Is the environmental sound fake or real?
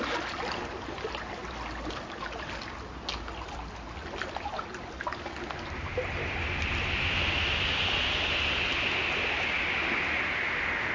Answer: real